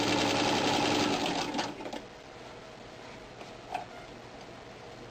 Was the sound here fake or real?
real